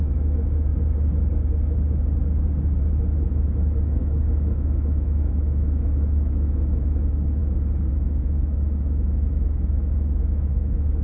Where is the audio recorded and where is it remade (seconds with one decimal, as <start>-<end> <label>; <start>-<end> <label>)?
0.0-0.7 remade; 0.7-3.8 recorded; 3.8-7.4 remade; 7.4-7.9 recorded; 7.9-11.0 remade